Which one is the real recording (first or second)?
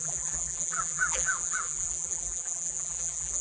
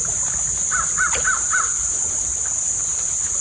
second